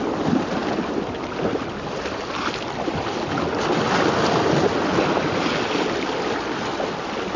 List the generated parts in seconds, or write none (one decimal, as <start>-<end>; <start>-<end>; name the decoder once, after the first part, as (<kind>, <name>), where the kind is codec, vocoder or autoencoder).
none